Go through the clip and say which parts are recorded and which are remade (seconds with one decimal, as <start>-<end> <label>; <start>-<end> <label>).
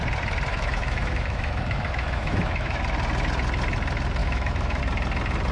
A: 0.0-0.5 recorded; 0.5-2.8 remade; 2.8-4.2 recorded; 4.2-4.8 remade; 4.8-5.5 recorded